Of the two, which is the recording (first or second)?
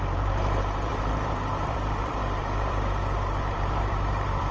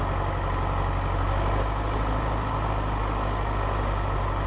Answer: second